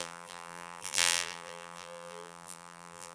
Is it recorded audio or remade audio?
remade